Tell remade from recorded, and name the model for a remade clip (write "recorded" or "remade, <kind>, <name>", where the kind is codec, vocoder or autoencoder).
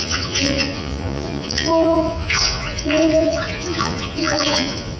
remade, vocoder, Vocos